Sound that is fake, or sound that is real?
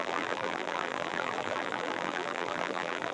fake